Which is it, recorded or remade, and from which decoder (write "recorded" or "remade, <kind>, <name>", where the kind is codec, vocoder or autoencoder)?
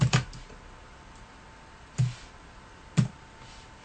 recorded